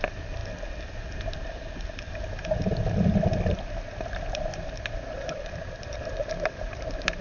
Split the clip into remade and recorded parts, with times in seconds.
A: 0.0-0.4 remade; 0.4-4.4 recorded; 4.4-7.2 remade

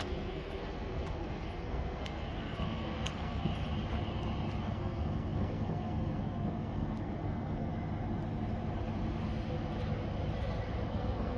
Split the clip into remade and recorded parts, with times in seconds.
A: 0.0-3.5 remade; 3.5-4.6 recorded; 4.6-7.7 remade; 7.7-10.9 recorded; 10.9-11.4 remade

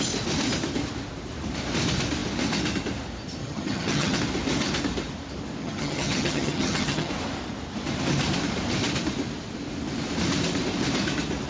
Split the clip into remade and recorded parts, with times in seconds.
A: 0.0-3.4 recorded; 3.4-4.2 remade; 4.2-5.6 recorded; 5.6-7.1 remade; 7.1-11.5 recorded

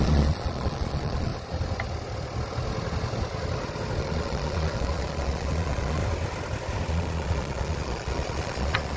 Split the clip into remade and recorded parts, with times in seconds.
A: 0.0-1.3 remade; 1.3-4.0 recorded; 4.0-6.0 remade; 6.0-6.9 recorded; 6.9-9.0 remade

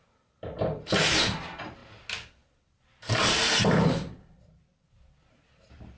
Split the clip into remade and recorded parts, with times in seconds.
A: 0.0-6.0 recorded

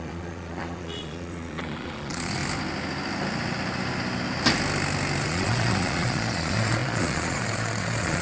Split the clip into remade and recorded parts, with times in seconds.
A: 0.0-2.4 remade; 2.4-5.2 recorded; 5.2-8.2 remade